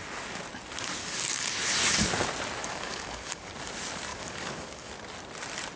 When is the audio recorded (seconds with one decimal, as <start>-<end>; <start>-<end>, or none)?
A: 0.0-1.0; 1.5-2.6; 3.5-4.1; 4.9-5.8